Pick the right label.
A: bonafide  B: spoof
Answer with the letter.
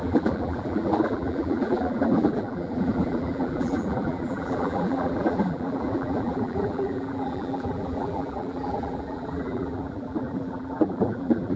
B